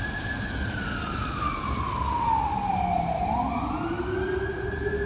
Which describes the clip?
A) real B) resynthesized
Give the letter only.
A